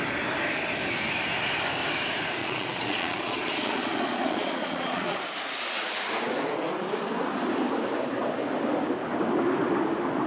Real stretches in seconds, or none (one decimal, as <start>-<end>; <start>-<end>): 0.0-2.4; 5.2-10.3